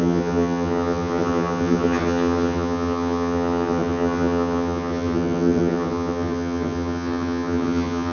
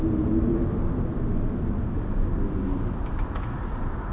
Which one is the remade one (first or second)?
first